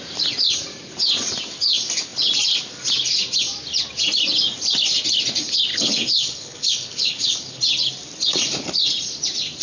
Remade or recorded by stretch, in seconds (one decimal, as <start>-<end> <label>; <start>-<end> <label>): 0.0-5.7 recorded; 5.7-7.6 remade; 7.6-9.6 recorded